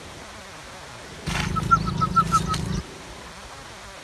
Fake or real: real